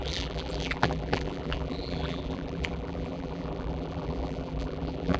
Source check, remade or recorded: remade